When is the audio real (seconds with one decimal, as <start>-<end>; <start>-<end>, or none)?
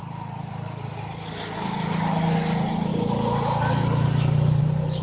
0.0-5.0